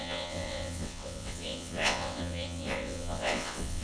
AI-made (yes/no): yes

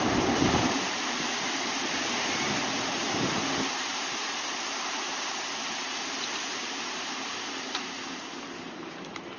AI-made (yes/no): yes